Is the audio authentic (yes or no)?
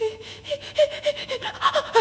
no